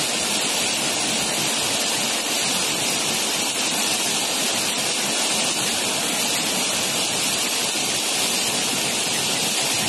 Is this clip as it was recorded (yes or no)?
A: yes